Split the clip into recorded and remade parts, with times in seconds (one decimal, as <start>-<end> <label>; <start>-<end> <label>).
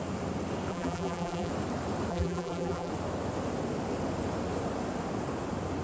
0.0-0.7 recorded; 0.7-1.5 remade; 1.5-2.1 recorded; 2.1-2.9 remade; 2.9-5.8 recorded